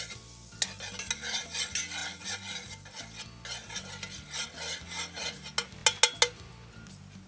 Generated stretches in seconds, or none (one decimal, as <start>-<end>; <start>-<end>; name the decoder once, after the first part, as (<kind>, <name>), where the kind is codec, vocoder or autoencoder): none